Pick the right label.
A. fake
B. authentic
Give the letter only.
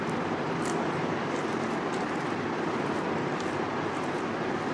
B